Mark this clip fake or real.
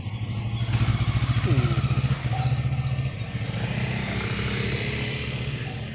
real